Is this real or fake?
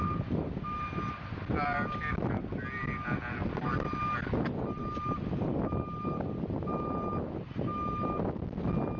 real